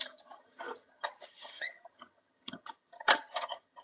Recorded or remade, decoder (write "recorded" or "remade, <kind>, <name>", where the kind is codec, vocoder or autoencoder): remade, vocoder, HiFi-GAN